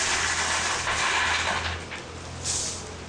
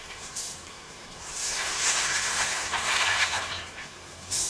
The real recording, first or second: first